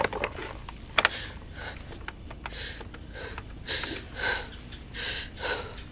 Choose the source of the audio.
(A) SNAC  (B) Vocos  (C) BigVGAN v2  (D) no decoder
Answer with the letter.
D